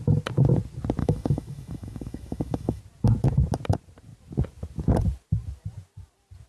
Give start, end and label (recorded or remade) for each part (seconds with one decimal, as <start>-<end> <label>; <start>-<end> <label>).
0.0-1.0 recorded; 1.0-2.8 remade; 2.8-6.5 recorded